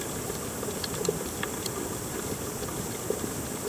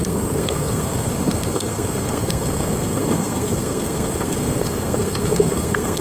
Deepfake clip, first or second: second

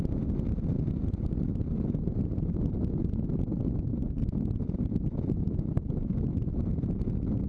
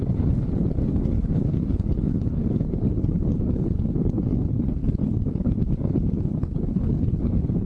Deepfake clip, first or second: second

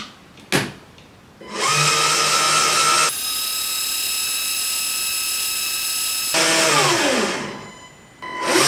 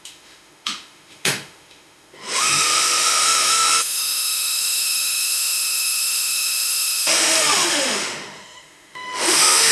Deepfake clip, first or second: second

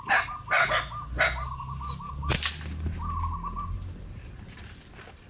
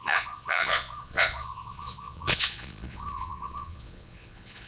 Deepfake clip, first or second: second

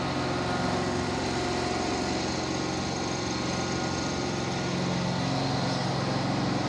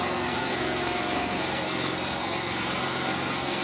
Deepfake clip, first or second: second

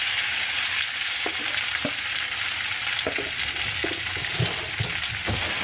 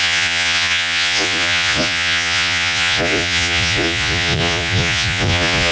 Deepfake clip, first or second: second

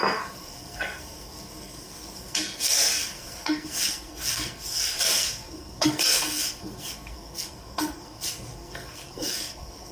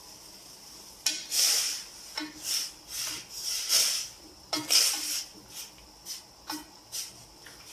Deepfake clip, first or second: first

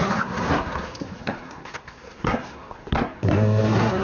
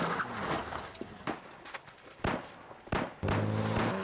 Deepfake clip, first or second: first